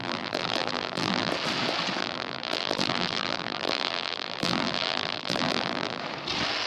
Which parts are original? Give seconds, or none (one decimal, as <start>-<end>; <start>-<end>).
1.3-2.0; 6.0-6.7